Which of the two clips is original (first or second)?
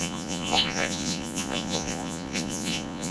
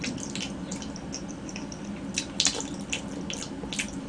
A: second